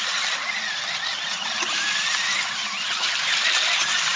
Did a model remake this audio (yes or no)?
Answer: no